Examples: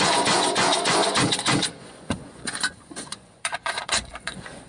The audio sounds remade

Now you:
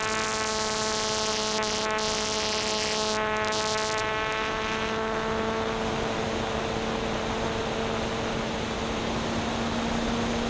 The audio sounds recorded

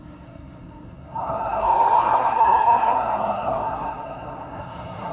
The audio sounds remade